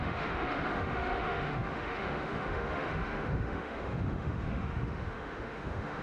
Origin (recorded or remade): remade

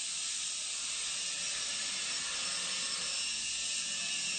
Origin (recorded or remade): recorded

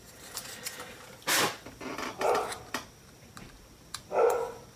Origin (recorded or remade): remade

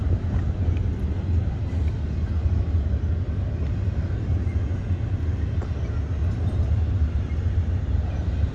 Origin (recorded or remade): recorded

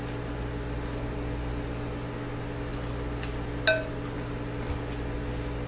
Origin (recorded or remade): recorded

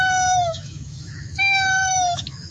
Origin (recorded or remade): remade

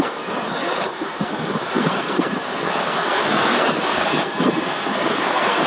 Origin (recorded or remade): remade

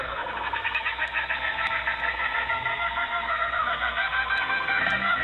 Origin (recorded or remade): remade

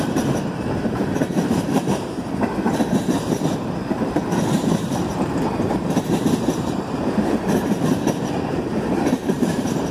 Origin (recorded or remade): remade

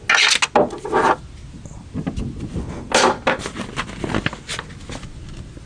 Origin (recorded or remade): recorded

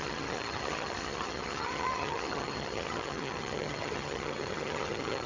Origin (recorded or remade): remade